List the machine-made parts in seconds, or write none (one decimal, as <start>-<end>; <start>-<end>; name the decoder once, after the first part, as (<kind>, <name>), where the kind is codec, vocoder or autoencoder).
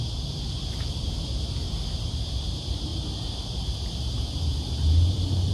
0.0-5.5 (vocoder, BigVGAN v2)